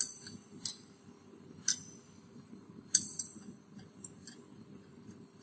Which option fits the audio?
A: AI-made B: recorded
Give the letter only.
A